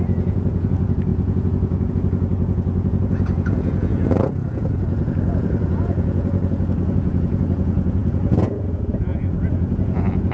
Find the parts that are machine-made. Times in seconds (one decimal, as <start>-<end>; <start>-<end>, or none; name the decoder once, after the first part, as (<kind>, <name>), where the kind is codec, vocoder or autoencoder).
0.0-10.3 (vocoder, Vocos)